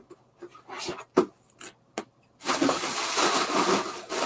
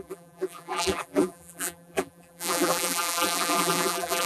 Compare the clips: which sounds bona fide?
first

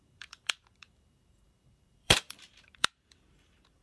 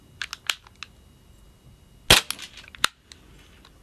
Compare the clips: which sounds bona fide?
second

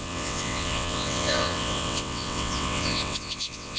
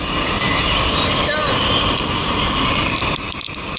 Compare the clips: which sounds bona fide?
second